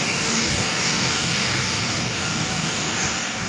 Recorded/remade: remade